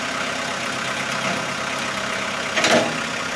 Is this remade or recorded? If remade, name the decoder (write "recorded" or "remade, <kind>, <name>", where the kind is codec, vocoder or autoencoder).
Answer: recorded